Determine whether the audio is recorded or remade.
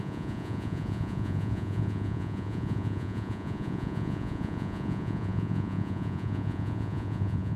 remade